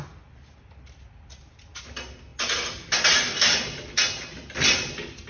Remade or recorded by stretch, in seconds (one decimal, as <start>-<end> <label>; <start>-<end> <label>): 0.0-5.3 recorded